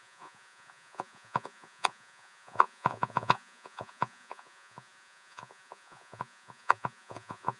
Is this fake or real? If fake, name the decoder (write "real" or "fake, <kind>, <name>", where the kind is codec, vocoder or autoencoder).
fake, vocoder, Vocos